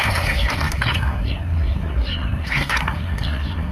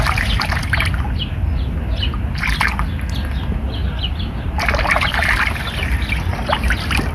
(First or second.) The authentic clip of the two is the second